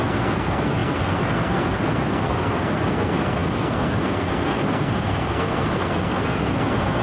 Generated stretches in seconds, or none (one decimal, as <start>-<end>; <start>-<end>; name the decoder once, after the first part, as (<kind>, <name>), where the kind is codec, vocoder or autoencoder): 0.0-7.0 (codec, SNAC)